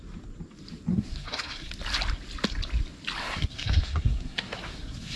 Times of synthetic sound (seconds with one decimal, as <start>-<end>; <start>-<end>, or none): 0.9-1.7; 3.2-5.2